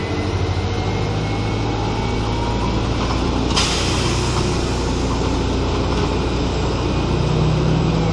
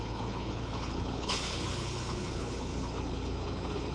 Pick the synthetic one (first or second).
second